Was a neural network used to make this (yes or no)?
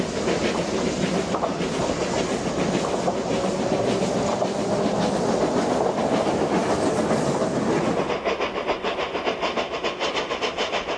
no